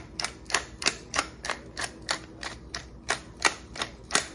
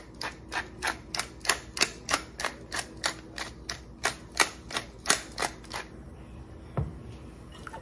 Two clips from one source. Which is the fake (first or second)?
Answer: first